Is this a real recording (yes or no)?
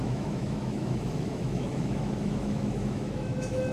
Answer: no